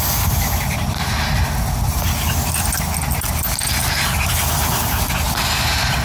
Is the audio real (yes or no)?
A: yes